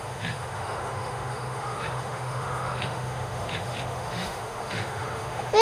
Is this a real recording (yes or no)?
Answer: no